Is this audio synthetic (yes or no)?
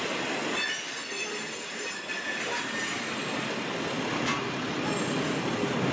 no